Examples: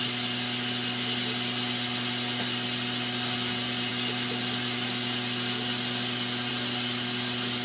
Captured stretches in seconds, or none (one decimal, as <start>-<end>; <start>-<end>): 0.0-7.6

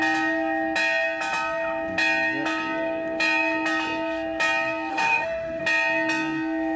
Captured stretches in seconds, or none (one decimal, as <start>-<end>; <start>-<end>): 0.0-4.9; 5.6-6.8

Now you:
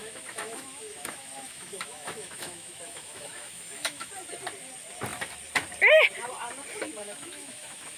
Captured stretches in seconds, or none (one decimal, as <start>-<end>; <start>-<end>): 4.1-7.0